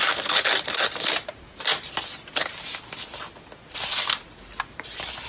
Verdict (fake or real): real